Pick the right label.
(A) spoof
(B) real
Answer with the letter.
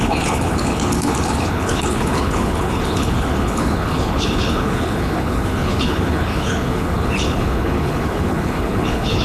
A